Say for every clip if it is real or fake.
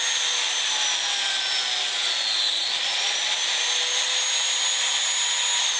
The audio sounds real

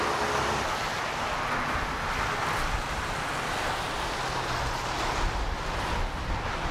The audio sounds real